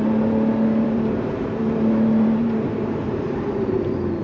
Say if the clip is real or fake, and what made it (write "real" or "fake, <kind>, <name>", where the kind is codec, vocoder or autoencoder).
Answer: fake, vocoder, BigVGAN v2